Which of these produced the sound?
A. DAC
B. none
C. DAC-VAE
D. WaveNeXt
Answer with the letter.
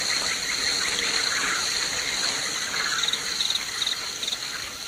B